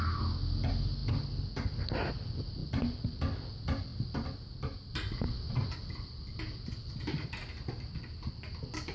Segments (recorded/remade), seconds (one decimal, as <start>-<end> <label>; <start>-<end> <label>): 0.0-8.9 recorded